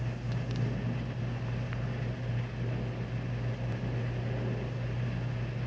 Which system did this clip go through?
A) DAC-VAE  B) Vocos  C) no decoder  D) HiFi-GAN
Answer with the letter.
C